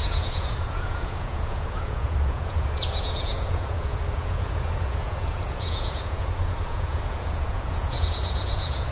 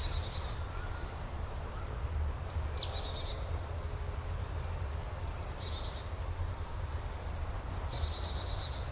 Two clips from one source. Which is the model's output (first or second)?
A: first